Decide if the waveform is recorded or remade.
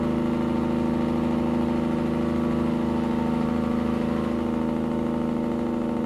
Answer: recorded